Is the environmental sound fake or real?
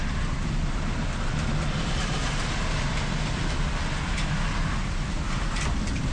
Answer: fake